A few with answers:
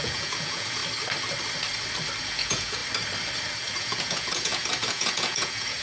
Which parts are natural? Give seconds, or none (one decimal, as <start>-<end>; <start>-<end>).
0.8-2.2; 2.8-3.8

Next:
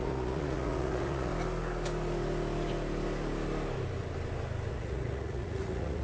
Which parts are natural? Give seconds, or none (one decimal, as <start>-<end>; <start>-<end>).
1.3-4.7

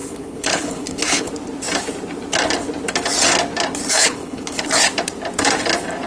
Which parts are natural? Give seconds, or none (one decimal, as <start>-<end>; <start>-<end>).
1.3-4.0; 4.7-6.1

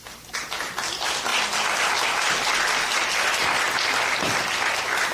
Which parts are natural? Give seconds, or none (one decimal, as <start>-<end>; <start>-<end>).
0.0-5.1

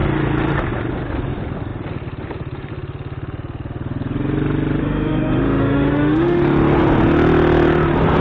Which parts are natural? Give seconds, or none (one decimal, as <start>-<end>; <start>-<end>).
0.0-4.8; 6.4-8.2